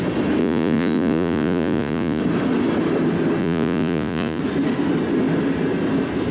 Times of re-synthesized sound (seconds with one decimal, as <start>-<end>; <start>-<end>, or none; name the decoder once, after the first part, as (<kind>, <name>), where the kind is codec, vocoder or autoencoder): 0.4-2.2 (vocoder, Vocos); 3.4-4.4